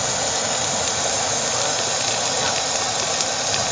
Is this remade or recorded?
recorded